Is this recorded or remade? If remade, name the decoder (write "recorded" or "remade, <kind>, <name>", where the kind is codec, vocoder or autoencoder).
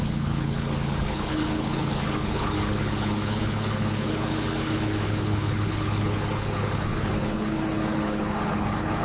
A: remade, codec, HILCodec